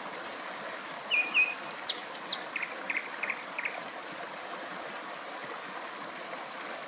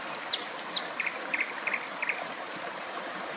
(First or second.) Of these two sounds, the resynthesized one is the second